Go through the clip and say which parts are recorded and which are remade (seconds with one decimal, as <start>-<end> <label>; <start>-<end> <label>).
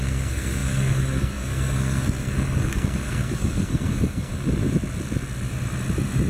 0.0-4.3 remade; 4.3-6.3 recorded